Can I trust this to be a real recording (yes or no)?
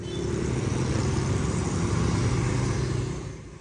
yes